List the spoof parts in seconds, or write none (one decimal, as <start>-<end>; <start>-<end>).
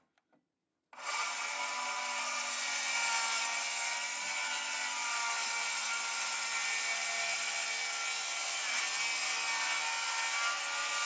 none